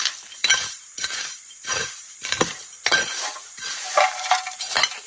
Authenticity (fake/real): fake